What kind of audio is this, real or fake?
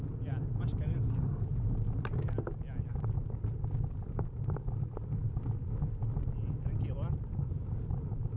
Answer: real